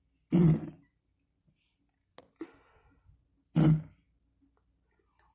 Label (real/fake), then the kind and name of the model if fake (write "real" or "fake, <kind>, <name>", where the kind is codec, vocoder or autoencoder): real